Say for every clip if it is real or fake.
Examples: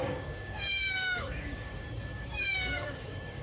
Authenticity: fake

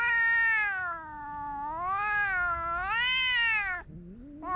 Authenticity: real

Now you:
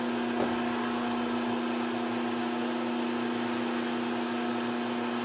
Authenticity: real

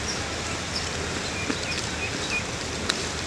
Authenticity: real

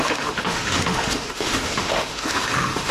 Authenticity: fake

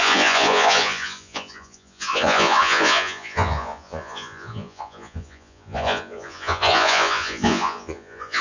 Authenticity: fake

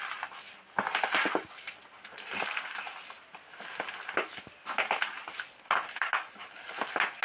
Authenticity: real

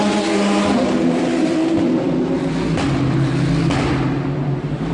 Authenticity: real